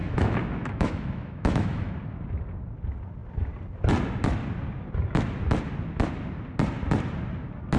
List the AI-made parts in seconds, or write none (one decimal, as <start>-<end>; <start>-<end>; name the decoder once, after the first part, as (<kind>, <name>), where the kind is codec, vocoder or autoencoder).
0.0-1.9 (autoencoder, DAC-VAE)